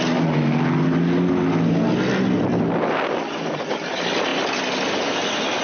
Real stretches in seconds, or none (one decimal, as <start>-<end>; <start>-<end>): 0.0-5.6